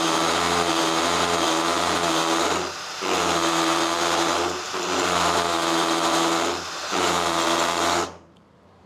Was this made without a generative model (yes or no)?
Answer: no